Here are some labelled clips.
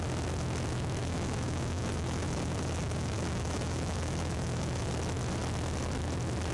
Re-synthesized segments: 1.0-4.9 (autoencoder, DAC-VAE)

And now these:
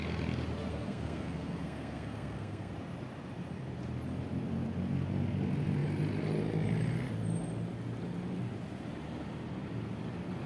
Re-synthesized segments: 0.7-2.7 (codec, SNAC)

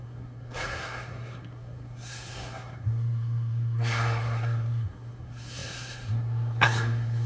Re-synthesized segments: 0.0-7.3 (codec, SNAC)

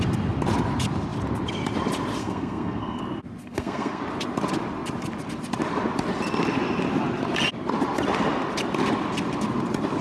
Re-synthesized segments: 2.2-3.0 (codec, SNAC); 3.4-4.0